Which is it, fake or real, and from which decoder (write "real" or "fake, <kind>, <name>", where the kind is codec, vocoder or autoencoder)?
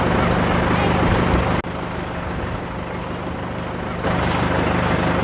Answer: real